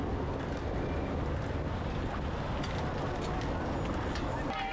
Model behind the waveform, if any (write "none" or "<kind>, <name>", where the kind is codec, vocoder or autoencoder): none